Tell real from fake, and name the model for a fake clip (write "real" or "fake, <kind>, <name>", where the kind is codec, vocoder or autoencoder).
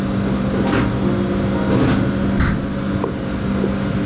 real